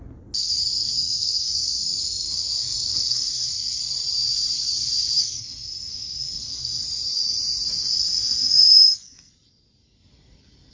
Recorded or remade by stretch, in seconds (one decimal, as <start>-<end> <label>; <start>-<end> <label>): 0.0-0.4 recorded; 0.4-3.8 remade; 3.8-5.2 recorded; 5.2-6.8 remade; 6.8-7.9 recorded; 7.9-9.3 remade; 9.3-10.7 recorded